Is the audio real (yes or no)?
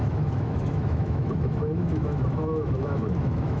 no